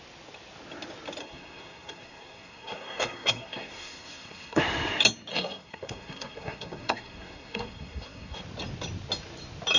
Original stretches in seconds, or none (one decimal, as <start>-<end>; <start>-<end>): 0.0-1.2; 4.6-5.3; 8.4-9.8